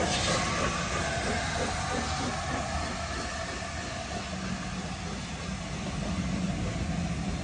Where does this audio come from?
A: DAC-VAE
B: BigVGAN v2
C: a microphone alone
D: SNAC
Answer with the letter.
C